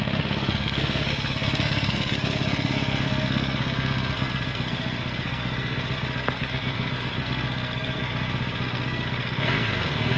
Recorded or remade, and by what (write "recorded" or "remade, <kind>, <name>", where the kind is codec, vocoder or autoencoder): remade, codec, SNAC